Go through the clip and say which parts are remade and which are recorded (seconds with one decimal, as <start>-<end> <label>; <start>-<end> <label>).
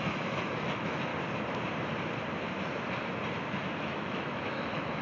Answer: 0.0-1.1 remade; 1.1-3.8 recorded; 3.8-5.0 remade